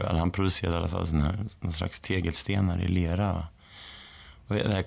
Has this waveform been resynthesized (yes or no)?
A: no